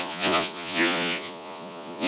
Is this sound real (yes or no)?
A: no